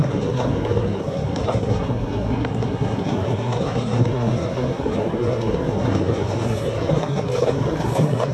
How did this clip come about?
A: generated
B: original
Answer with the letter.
A